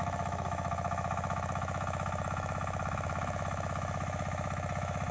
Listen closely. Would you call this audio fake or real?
fake